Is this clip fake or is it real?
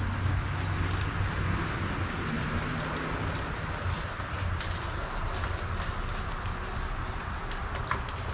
real